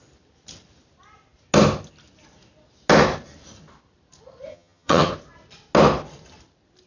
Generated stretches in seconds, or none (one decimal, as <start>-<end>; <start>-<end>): 4.5-5.1